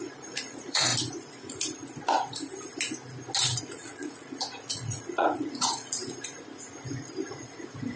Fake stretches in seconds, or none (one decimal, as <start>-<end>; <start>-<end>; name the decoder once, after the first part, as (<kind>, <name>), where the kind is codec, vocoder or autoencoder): 0.0-0.9 (vocoder, Vocos); 3.6-6.0; 7.3-8.0